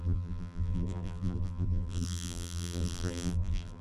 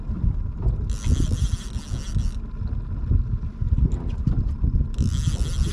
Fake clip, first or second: first